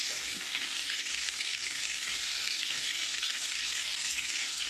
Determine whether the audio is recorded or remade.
remade